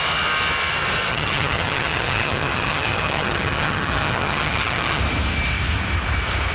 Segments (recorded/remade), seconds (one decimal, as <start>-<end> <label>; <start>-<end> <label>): 0.0-1.1 recorded; 1.1-5.0 remade; 5.0-6.5 recorded